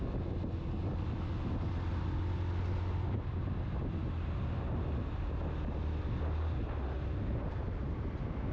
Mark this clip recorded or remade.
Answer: recorded